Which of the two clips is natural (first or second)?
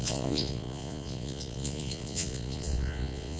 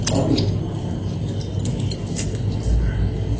second